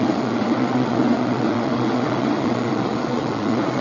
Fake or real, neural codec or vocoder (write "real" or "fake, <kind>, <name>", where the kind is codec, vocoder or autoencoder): fake, vocoder, WaveNeXt